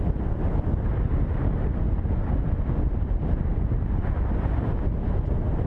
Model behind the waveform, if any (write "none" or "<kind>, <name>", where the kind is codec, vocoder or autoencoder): none